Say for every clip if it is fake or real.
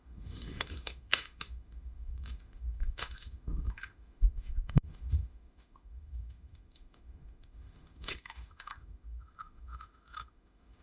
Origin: fake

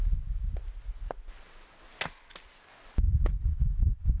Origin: real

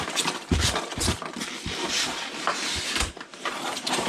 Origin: fake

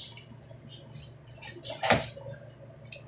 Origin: real